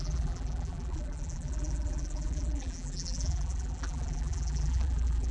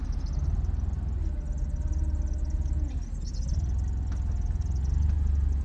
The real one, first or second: second